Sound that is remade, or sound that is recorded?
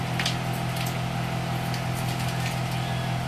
recorded